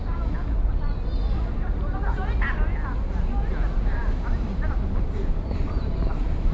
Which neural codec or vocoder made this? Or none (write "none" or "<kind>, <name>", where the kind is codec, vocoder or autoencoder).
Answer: none